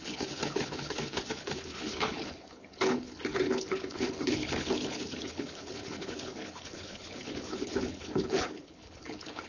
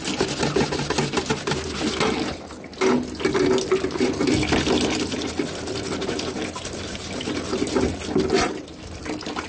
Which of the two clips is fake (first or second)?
first